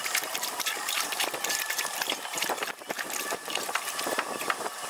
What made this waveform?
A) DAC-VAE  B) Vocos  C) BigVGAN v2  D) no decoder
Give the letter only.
C